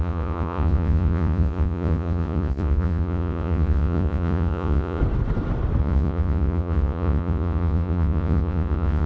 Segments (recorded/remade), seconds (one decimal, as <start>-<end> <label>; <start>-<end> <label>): 0.0-5.0 remade; 5.0-5.8 recorded; 5.8-9.1 remade